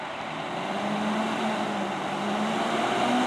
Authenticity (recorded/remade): recorded